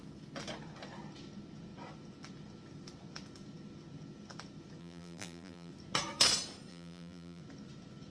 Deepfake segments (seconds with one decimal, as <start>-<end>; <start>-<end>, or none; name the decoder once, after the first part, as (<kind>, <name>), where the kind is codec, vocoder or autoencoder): 4.8-5.7 (vocoder, BigVGAN v2); 6.7-7.4